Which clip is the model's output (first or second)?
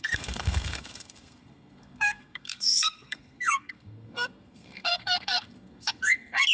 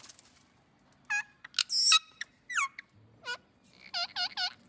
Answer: first